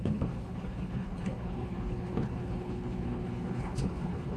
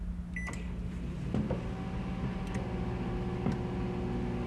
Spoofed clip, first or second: first